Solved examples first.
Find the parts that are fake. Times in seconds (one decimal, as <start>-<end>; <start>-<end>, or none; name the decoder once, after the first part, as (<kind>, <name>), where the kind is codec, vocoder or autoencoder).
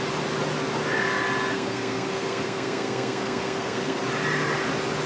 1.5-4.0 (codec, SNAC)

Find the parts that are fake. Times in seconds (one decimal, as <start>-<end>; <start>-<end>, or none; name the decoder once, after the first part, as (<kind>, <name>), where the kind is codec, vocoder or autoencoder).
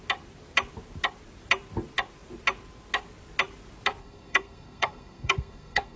4.0-6.0 (codec, SNAC)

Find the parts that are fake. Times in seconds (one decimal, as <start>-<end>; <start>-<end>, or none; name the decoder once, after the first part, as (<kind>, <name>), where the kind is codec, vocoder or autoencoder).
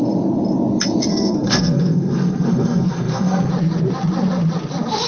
1.1-3.5 (codec, SNAC)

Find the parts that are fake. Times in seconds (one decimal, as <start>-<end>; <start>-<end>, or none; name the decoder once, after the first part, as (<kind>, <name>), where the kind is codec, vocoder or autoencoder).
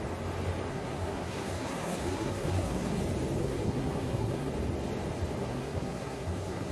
0.7-3.0 (codec, SNAC); 3.4-4.5; 5.4-6.7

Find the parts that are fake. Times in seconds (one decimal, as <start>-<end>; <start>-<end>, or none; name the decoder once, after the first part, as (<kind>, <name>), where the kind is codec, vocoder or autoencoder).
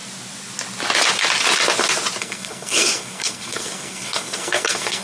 2.2-5.0 (codec, SNAC)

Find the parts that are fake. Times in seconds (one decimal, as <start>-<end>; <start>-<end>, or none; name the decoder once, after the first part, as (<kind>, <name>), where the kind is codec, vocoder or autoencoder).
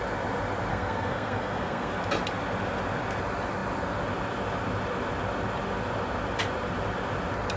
0.7-2.0 (codec, SNAC)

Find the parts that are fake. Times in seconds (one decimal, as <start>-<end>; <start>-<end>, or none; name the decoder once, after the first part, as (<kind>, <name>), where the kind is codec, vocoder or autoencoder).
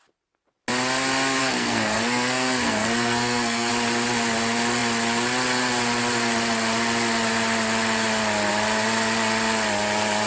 1.4-3.7 (codec, SNAC)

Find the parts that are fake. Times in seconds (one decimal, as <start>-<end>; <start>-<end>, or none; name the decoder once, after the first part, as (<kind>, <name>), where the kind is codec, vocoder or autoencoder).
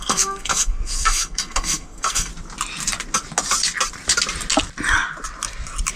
0.0-2.3 (codec, SNAC)